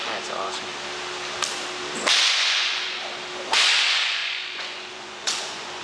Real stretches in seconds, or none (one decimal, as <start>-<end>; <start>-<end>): 0.7-2.2; 3.0-3.5